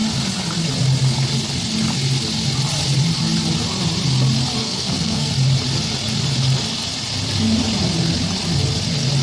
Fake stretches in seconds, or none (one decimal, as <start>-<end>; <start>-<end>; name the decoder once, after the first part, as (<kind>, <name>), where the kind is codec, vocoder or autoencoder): 4.6-5.3 (codec, SNAC)